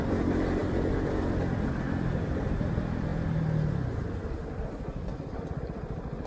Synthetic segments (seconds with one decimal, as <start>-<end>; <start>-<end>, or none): 0.0-3.1; 4.6-6.3